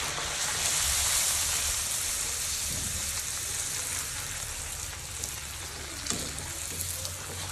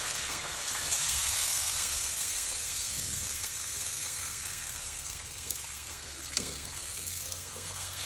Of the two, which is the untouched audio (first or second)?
first